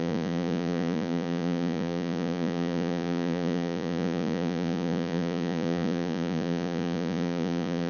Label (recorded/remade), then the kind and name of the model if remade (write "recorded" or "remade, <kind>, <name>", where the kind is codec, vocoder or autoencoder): remade, vocoder, Vocos